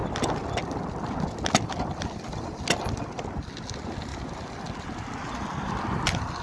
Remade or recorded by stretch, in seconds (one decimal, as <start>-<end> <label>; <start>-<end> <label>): 0.0-6.4 recorded